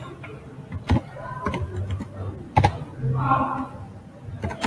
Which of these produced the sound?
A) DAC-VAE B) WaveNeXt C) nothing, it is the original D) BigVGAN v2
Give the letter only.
C